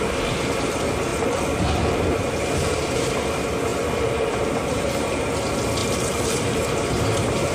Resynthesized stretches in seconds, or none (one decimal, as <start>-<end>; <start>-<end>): 1.1-3.0; 3.7-5.3; 5.8-6.7